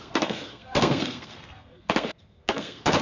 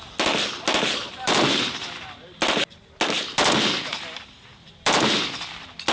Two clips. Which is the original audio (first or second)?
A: second